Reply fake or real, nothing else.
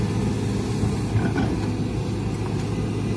real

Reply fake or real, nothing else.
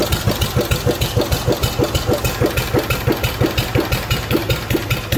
real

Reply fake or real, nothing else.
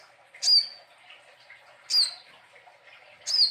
real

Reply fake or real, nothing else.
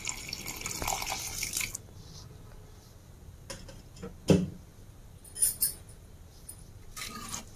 real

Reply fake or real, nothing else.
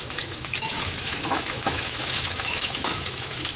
fake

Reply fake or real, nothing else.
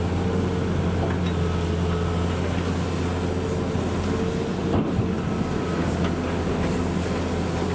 real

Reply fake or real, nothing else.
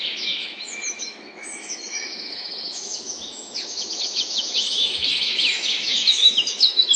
fake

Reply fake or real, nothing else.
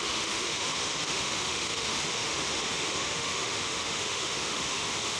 fake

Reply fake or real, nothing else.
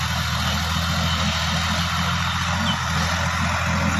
real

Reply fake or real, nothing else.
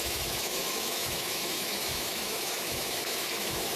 fake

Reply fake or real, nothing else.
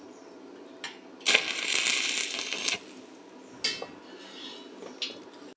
real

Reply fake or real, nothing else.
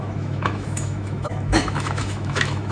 fake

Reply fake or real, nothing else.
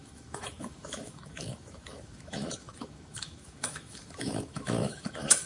fake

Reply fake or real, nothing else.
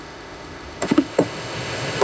fake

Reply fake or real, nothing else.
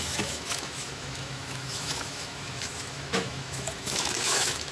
fake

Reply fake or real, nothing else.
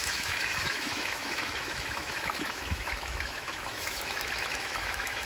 fake